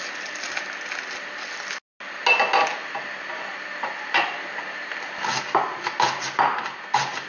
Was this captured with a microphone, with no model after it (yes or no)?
yes